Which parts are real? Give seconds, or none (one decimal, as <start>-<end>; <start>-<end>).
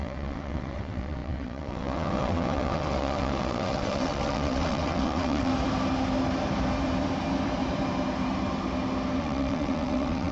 5.5-9.2